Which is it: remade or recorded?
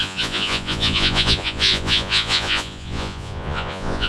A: remade